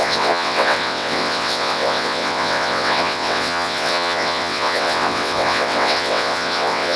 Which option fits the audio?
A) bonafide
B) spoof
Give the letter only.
B